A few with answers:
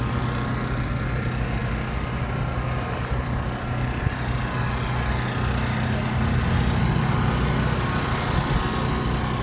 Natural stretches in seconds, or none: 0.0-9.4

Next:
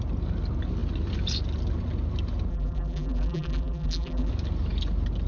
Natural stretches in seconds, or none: 0.0-2.5; 4.3-5.3